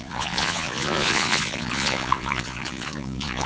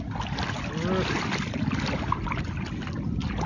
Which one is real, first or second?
second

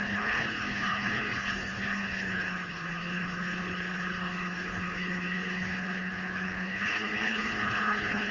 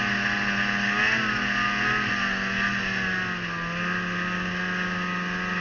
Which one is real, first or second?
second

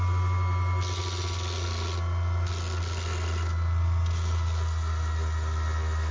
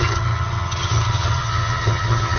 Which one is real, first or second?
first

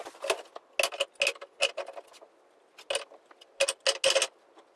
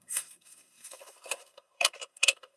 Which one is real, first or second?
first